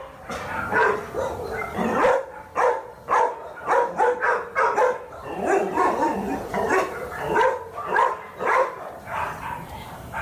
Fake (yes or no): yes